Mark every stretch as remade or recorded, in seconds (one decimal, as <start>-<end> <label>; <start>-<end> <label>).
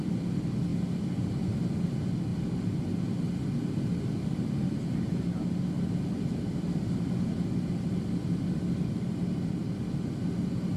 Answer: 0.0-10.8 recorded